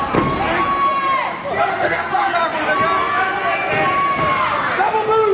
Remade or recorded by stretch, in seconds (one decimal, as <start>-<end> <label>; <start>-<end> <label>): 0.0-1.7 recorded; 1.7-2.3 remade; 2.3-5.3 recorded